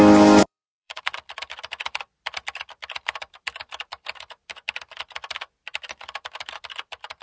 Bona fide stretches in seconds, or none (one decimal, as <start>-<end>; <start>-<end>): 0.0-0.4; 1.0-7.2